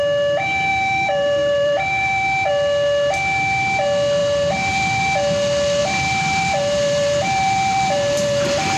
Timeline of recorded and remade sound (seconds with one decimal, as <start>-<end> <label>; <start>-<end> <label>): 0.0-0.7 recorded; 0.7-2.5 remade; 2.5-4.2 recorded; 4.2-5.0 remade; 5.0-5.8 recorded; 5.8-8.8 remade